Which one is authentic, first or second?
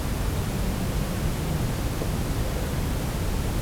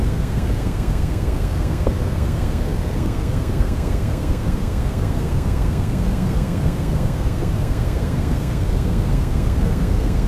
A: first